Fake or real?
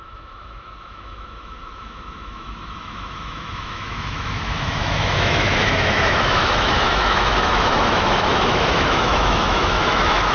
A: fake